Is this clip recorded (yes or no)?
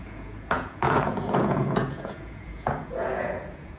no